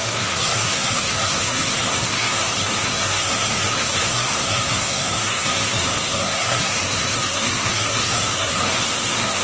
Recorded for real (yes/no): no